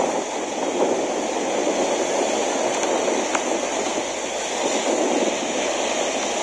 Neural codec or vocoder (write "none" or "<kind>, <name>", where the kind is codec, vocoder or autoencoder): none